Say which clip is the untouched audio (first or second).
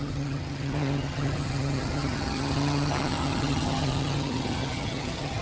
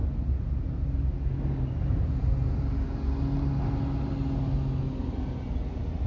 second